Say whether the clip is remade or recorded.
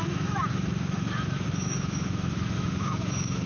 remade